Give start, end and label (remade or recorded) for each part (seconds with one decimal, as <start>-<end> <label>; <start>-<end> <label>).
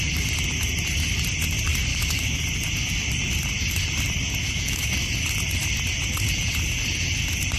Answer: 0.0-1.9 recorded; 1.9-2.4 remade; 2.4-4.4 recorded; 4.4-4.9 remade; 4.9-7.6 recorded